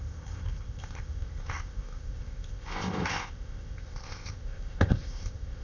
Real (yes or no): no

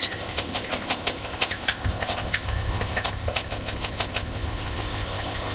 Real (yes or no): no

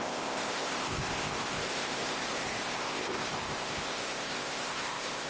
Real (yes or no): no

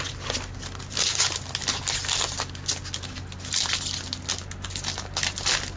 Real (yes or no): yes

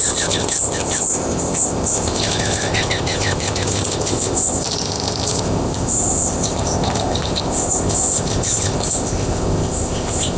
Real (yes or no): no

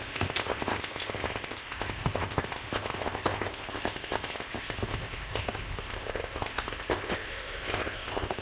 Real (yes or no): no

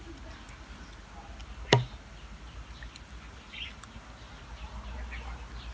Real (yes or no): yes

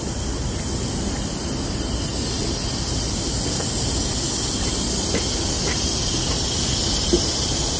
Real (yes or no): yes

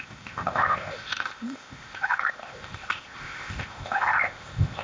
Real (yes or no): no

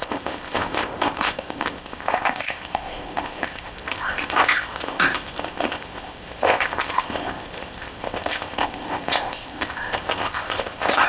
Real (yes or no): no